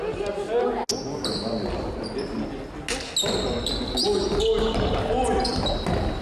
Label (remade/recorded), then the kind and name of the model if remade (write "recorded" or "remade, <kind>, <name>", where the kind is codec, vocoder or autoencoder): recorded